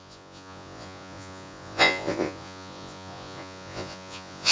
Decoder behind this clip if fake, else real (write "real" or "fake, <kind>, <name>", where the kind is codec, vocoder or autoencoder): fake, vocoder, Vocos